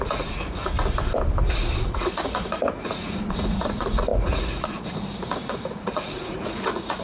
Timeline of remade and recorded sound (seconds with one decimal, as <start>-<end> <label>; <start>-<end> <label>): 0.0-0.6 remade; 0.6-1.8 recorded; 1.8-7.0 remade